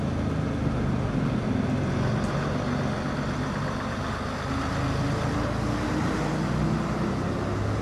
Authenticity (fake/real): real